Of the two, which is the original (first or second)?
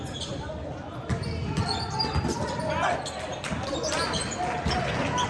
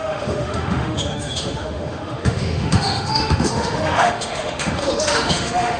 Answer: first